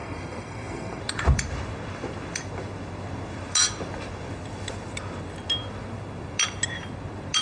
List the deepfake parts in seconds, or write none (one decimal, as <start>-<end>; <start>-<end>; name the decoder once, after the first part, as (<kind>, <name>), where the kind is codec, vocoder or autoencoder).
0.0-1.0 (codec, SNAC)